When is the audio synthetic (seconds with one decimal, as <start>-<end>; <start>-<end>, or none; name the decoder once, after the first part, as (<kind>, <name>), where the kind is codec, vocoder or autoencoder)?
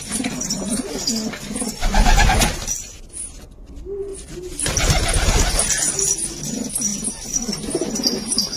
4.1-4.7 (vocoder, BigVGAN v2)